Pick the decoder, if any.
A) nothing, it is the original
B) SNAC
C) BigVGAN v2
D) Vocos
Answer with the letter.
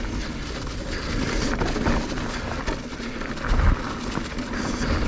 A